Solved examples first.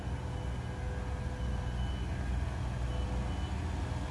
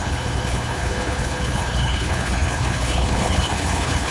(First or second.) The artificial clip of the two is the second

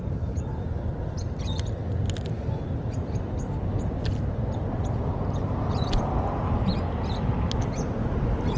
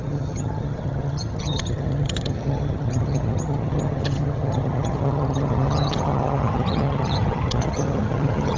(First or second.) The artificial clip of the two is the second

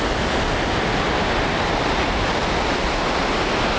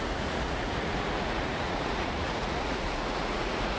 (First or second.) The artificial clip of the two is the second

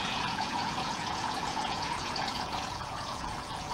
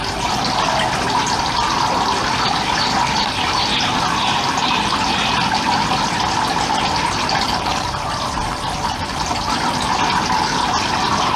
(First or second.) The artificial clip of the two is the first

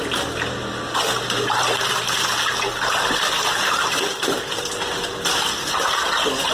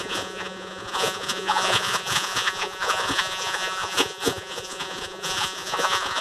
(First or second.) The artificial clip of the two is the second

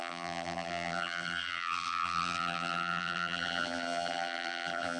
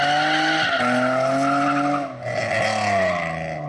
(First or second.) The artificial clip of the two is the first